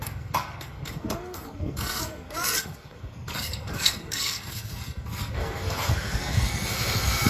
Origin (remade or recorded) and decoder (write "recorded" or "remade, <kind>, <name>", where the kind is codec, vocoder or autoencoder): remade, codec, SNAC